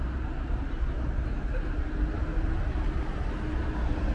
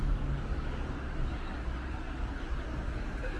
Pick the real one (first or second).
first